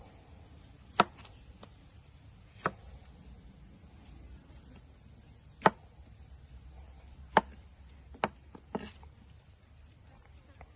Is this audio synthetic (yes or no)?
no